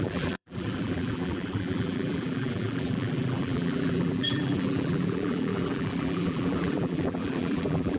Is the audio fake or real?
fake